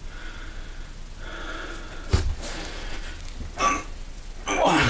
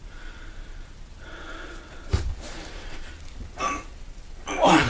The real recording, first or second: first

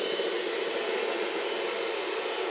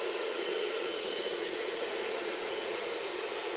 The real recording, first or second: first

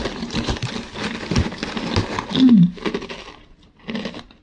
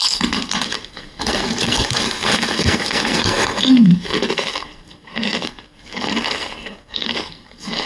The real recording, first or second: first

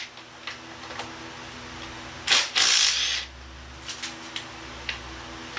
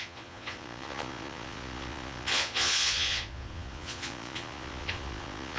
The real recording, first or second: first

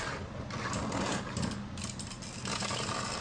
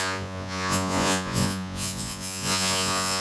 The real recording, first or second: first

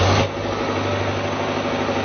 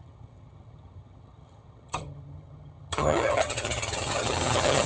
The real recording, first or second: first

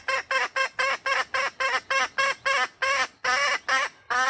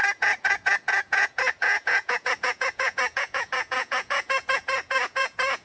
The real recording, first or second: first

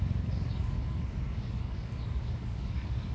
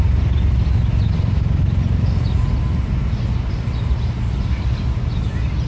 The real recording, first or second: second